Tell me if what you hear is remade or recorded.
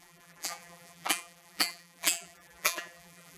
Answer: remade